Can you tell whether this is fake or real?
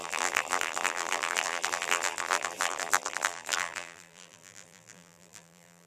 fake